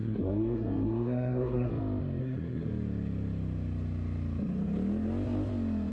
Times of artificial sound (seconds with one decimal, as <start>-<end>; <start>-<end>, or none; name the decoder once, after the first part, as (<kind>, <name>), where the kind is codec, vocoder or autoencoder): 0.0-1.7 (codec, SNAC); 2.2-2.7